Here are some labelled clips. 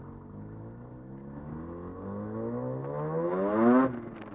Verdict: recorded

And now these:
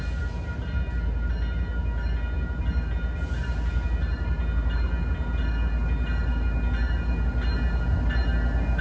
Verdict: recorded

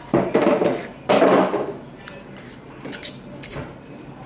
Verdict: remade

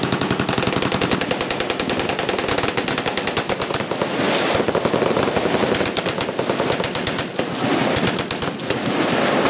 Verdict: recorded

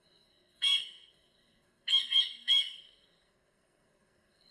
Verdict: remade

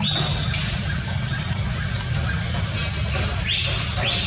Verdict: recorded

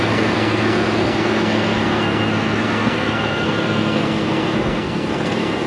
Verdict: remade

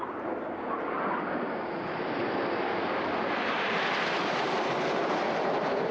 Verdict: recorded